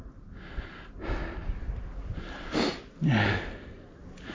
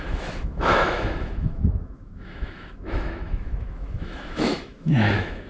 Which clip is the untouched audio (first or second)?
first